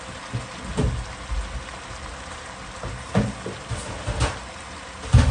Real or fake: real